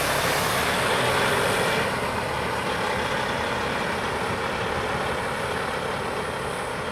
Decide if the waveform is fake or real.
real